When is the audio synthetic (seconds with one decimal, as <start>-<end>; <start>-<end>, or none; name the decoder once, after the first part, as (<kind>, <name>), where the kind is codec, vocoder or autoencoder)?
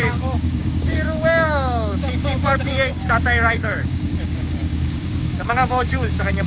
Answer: 0.0-6.5 (codec, DAC)